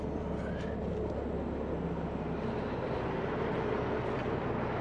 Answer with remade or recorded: recorded